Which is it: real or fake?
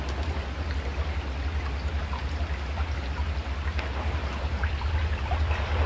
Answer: real